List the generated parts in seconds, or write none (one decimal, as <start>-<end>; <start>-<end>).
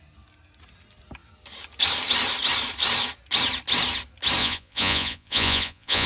4.4-6.1